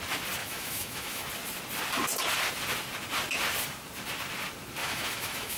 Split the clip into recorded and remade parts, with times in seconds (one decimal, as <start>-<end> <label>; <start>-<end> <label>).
0.0-0.4 recorded; 0.4-1.3 remade; 1.3-4.8 recorded; 4.8-5.6 remade